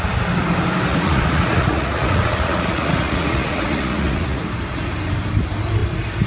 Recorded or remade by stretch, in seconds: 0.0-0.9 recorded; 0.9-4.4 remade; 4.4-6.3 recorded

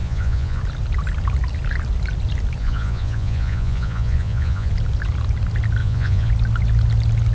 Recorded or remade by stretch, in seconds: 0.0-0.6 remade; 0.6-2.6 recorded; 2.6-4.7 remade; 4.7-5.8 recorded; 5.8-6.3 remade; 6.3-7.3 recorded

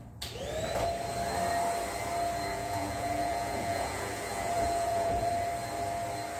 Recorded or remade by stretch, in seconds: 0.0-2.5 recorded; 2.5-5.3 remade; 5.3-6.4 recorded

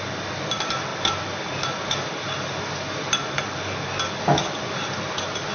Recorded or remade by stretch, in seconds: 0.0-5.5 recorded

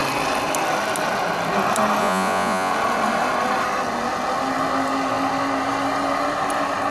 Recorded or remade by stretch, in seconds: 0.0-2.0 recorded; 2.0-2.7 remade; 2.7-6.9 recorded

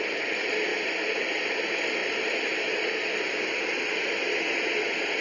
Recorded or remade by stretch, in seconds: 0.0-5.2 recorded

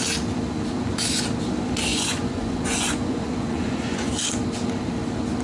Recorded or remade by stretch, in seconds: 0.0-1.9 recorded; 1.9-4.1 remade; 4.1-5.4 recorded

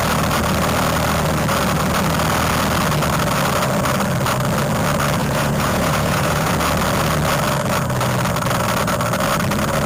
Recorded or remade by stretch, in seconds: 0.0-5.2 recorded; 5.2-6.5 remade; 6.5-9.9 recorded